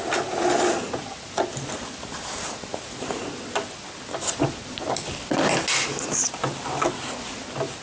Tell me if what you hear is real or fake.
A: real